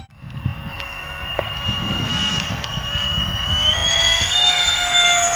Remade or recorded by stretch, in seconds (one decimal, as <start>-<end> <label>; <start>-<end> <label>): 0.0-5.4 remade